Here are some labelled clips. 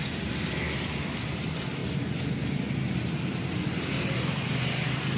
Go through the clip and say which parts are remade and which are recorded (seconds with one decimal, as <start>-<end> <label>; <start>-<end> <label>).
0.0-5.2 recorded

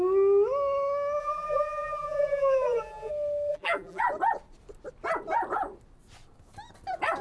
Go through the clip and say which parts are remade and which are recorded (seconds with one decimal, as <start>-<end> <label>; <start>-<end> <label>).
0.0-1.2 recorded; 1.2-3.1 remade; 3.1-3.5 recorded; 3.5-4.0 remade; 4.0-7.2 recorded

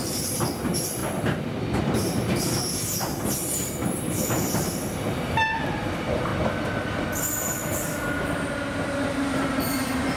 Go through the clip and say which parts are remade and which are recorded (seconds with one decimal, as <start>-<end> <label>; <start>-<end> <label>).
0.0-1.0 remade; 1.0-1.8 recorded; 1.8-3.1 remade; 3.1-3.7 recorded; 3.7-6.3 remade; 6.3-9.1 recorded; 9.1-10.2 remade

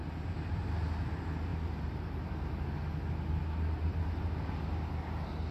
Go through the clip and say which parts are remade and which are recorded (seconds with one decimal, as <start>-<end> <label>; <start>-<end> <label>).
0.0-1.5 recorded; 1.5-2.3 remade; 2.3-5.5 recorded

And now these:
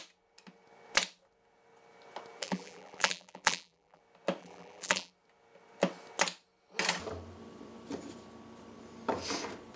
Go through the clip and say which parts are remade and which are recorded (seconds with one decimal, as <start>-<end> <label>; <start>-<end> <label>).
0.0-2.4 recorded; 2.4-4.0 remade; 4.0-4.4 recorded; 4.4-5.1 remade; 5.1-9.8 recorded